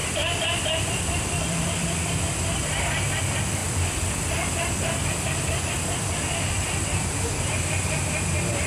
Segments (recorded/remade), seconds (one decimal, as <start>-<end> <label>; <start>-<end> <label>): 0.0-2.2 remade; 2.2-8.7 recorded